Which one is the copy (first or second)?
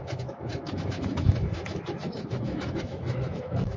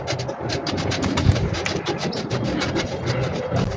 first